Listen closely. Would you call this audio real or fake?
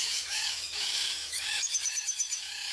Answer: fake